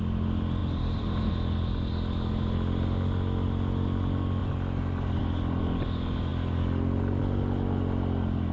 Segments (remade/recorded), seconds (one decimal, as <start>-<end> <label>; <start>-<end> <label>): 0.0-0.6 recorded; 0.6-1.3 remade; 1.3-4.4 recorded; 4.4-5.2 remade; 5.2-8.5 recorded